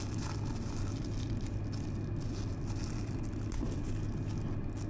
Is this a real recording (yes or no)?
yes